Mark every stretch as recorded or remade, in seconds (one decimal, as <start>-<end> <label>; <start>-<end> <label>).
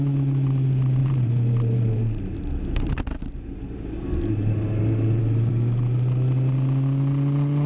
0.0-1.0 recorded; 1.0-5.5 remade; 5.5-7.7 recorded